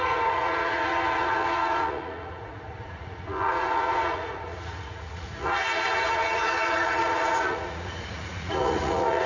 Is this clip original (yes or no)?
no